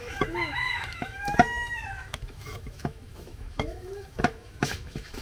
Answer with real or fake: fake